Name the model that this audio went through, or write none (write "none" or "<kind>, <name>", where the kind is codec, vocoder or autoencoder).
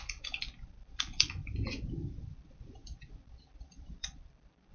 vocoder, BigVGAN v2